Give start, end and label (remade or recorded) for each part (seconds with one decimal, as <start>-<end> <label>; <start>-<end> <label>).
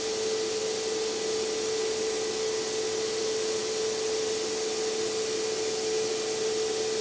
0.0-7.0 recorded